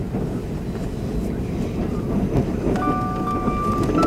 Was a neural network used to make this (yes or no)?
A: no